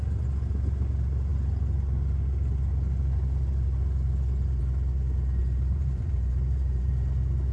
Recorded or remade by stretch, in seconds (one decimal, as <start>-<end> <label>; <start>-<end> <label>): 0.0-5.4 recorded; 5.4-6.9 remade; 6.9-7.5 recorded